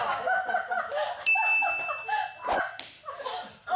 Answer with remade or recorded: recorded